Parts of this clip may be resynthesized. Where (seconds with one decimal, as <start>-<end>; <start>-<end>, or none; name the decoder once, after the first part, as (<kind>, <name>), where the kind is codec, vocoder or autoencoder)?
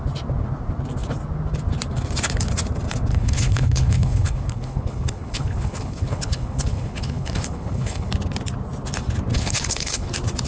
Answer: 3.1-8.1 (codec, HILCodec); 9.3-10.1